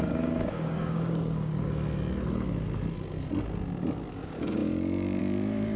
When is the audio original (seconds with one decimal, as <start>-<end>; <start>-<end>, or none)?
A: 1.5-4.1